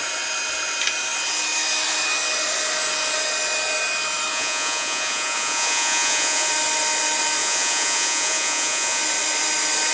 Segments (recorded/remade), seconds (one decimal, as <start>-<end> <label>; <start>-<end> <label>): 0.0-4.3 recorded; 4.3-6.5 remade; 6.5-7.4 recorded; 7.4-9.0 remade; 9.0-9.9 recorded